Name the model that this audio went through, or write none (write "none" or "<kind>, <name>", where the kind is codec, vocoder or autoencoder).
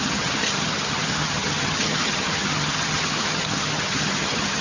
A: vocoder, HiFi-GAN